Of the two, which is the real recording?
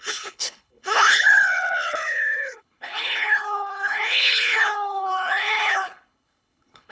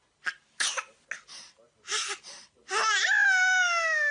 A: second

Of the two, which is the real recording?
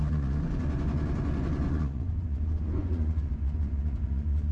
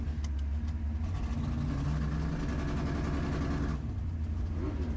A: second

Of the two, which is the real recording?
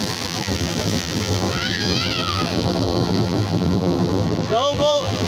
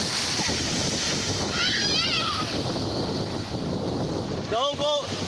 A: second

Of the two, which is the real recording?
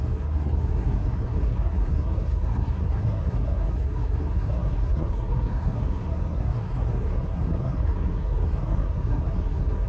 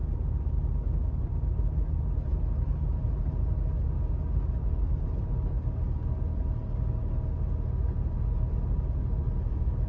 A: second